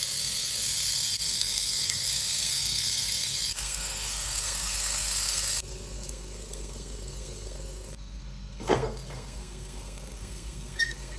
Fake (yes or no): yes